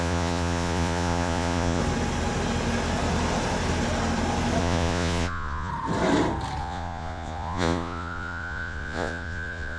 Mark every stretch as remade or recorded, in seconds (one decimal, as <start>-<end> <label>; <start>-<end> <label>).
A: 0.0-1.8 remade; 1.8-4.6 recorded; 4.6-5.7 remade; 5.7-6.6 recorded; 6.6-9.8 remade